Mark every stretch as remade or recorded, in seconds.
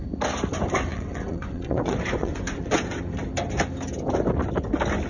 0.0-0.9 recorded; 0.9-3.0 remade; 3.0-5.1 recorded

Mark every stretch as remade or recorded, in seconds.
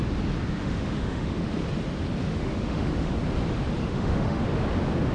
0.0-0.6 recorded; 0.6-1.5 remade; 1.5-2.3 recorded; 2.3-3.1 remade; 3.1-3.8 recorded; 3.8-4.4 remade; 4.4-5.1 recorded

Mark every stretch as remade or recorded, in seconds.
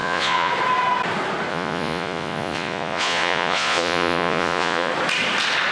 0.0-0.5 remade; 0.5-1.5 recorded; 1.5-4.9 remade; 4.9-5.7 recorded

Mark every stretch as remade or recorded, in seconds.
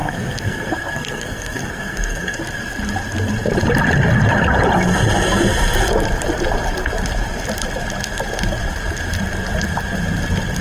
0.0-2.4 remade; 2.4-10.6 recorded